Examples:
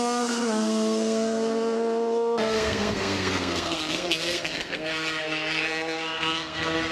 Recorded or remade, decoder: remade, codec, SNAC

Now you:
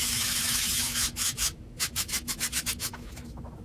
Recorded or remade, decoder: remade, autoencoder, DAC-VAE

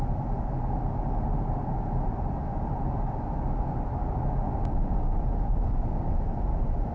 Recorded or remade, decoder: recorded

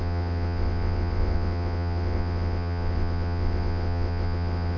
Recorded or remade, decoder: remade, vocoder, WaveNeXt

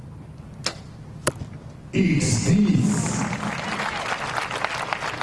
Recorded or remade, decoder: recorded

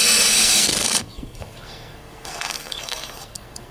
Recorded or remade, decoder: remade, codec, SNAC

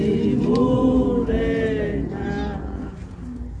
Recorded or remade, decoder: recorded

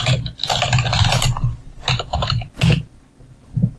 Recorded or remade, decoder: recorded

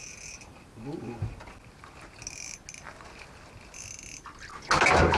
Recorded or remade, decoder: recorded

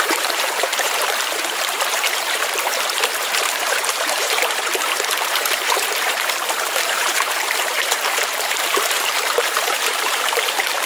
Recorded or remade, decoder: remade, vocoder, BigVGAN v2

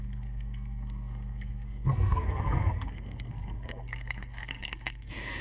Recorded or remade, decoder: remade, codec, SNAC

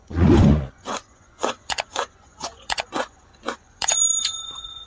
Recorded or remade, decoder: remade, vocoder, Vocos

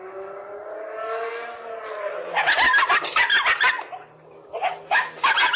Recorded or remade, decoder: recorded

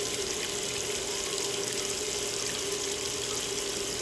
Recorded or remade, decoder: recorded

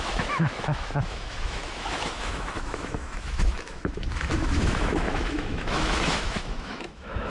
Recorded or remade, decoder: remade, autoencoder, DAC-VAE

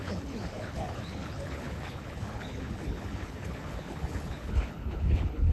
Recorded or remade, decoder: remade, codec, HILCodec